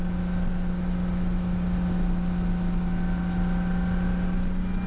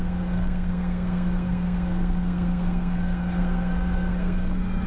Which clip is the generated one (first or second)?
second